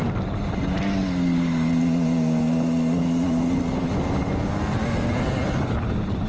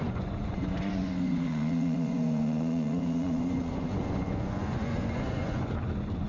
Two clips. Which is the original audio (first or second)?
first